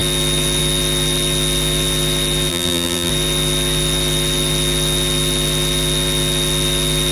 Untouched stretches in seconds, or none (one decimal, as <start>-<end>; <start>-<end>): 0.0-2.5; 3.1-7.1